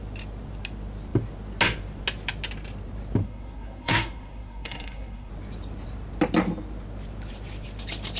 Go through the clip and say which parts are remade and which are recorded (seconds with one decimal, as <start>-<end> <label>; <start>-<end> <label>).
0.0-3.2 recorded; 3.2-5.3 remade; 5.3-8.2 recorded